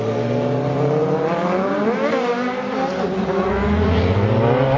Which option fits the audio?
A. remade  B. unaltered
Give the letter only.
B